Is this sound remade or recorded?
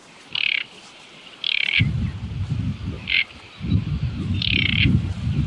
recorded